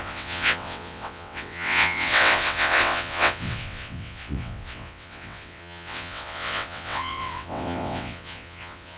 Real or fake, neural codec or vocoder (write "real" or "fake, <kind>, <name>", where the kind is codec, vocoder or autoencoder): fake, vocoder, WaveNeXt